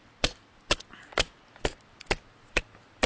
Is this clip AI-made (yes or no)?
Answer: yes